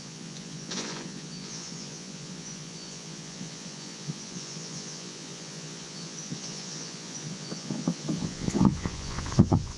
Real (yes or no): no